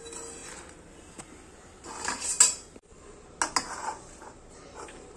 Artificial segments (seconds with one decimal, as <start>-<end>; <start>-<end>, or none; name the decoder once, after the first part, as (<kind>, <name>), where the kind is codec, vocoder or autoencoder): none